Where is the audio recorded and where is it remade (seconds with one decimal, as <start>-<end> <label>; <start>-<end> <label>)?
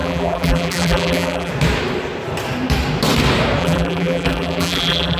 0.0-1.5 remade; 1.5-3.6 recorded; 3.6-5.2 remade